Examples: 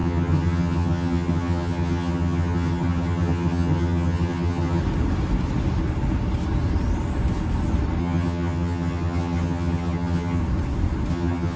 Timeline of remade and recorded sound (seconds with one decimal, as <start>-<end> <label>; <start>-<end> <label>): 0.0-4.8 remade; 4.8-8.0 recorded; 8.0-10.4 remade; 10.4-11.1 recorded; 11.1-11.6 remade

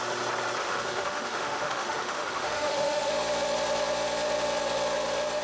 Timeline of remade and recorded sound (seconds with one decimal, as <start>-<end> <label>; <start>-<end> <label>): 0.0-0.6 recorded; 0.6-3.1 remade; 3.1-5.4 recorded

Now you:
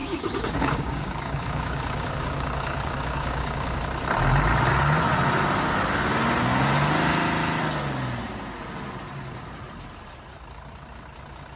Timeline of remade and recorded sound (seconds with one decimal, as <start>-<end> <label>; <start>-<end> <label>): 0.0-3.8 remade; 3.8-11.6 recorded